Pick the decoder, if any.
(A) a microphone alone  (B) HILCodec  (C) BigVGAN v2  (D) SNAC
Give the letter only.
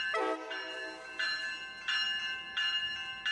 A